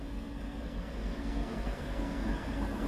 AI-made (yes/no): yes